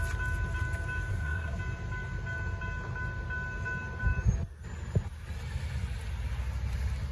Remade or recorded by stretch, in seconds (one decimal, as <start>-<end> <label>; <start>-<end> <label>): 0.0-1.1 recorded; 1.1-1.6 remade; 1.6-7.1 recorded